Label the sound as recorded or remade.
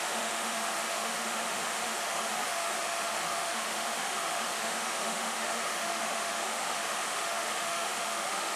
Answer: remade